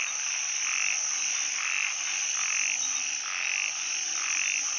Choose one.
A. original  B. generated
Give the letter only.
A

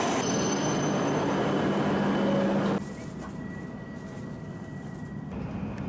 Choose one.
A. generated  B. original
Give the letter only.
B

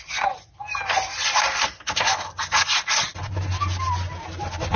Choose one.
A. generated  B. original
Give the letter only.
B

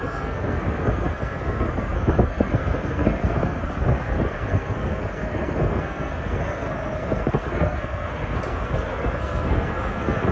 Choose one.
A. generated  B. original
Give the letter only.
A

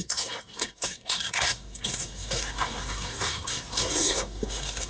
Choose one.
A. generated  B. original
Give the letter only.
A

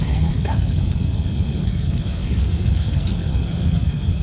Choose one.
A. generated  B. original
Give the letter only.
A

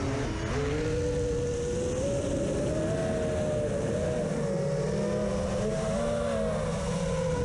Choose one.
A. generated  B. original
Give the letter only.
B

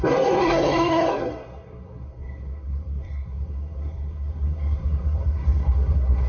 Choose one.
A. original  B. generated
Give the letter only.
B